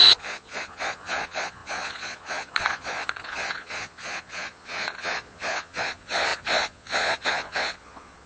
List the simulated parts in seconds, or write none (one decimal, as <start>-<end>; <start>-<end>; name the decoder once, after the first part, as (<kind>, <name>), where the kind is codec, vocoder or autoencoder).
0.0-8.3 (vocoder, Vocos)